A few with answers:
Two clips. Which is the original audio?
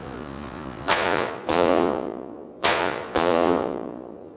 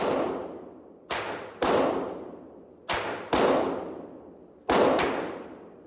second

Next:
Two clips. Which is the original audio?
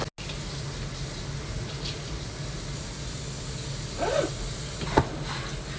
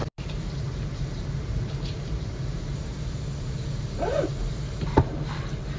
first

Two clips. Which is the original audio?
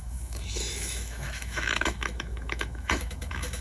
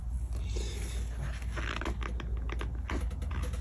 second